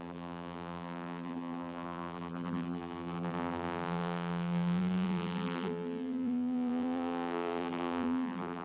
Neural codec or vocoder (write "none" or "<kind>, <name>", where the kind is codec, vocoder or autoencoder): vocoder, BigVGAN v2